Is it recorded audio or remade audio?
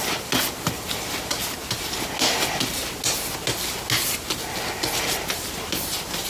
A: recorded